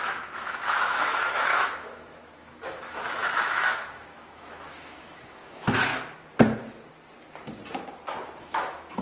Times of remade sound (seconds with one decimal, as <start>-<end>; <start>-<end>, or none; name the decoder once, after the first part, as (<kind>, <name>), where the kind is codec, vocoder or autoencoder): 0.0-5.9 (autoencoder, DAC-VAE); 8.4-9.0